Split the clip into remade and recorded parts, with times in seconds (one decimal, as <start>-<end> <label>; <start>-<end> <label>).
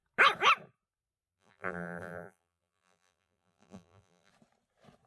0.0-1.3 recorded; 1.3-4.3 remade; 4.3-5.1 recorded